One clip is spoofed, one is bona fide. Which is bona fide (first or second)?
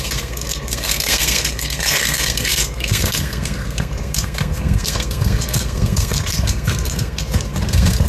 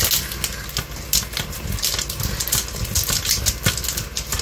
second